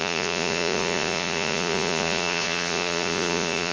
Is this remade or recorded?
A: remade